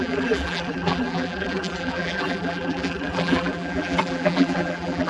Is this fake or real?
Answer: fake